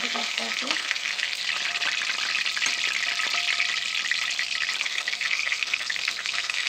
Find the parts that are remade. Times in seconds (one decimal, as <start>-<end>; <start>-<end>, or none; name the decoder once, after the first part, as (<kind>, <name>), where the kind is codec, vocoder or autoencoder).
0.0-1.4 (codec, SNAC); 4.8-6.7